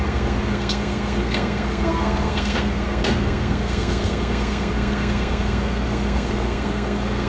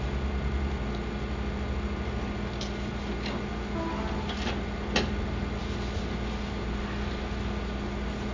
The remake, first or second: first